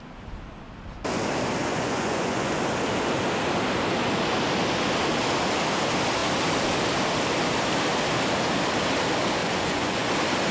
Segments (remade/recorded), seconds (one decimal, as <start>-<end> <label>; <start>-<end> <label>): 0.0-1.6 recorded; 1.6-2.6 remade; 2.6-9.4 recorded; 9.4-10.1 remade; 10.1-10.5 recorded